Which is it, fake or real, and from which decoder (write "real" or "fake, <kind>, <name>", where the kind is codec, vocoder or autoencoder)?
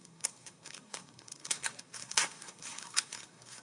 fake, codec, SNAC